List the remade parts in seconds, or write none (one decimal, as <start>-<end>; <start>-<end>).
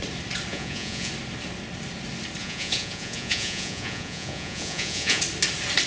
0.5-1.1; 2.4-5.2